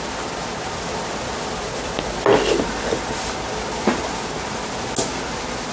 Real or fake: real